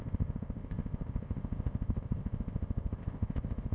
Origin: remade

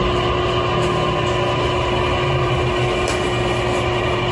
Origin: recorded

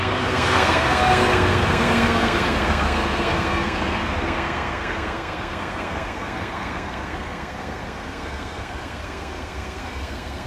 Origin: remade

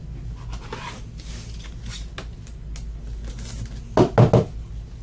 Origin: recorded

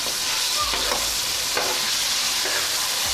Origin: recorded